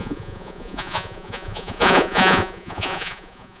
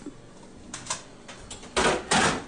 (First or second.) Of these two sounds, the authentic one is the second